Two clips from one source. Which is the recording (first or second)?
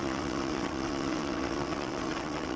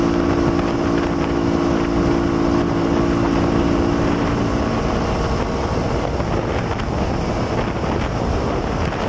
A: second